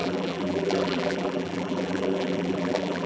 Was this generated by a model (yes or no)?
yes